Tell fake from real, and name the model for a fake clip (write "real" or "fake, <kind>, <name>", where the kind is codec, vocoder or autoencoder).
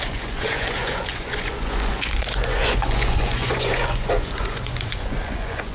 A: fake, vocoder, Vocos